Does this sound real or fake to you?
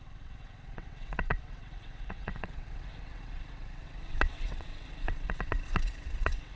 fake